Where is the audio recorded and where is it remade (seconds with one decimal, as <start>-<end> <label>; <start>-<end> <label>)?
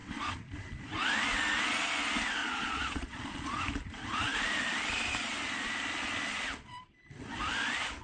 0.0-2.4 recorded; 2.4-3.6 remade; 3.6-8.0 recorded